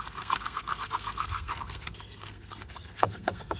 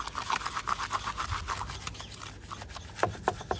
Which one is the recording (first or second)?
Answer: second